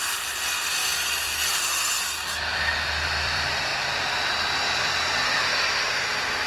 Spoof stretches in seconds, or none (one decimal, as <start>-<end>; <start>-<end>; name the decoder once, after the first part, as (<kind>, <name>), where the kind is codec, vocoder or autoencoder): 0.0-0.8 (vocoder, BigVGAN v2); 2.8-3.7; 4.5-5.5